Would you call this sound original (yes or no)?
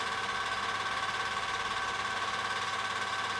yes